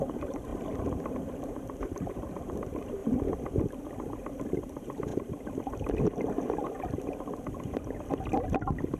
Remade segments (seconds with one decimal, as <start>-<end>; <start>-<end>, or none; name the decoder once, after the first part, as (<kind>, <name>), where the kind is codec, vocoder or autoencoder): 0.0-0.5 (vocoder, BigVGAN v2); 1.1-3.0; 4.5-5.1